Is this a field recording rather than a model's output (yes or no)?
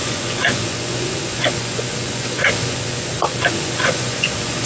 no